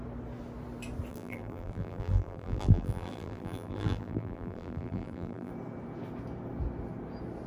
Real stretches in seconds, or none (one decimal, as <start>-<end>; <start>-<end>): 0.0-1.1; 5.5-7.5